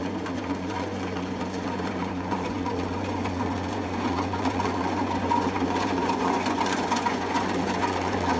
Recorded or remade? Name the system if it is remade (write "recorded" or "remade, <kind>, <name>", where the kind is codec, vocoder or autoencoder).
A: remade, vocoder, Vocos